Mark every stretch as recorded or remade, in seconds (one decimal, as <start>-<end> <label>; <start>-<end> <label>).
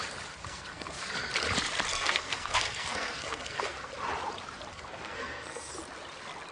0.0-0.4 recorded; 0.4-1.1 remade; 1.1-1.9 recorded; 1.9-3.9 remade; 3.9-4.7 recorded; 4.7-5.7 remade; 5.7-6.5 recorded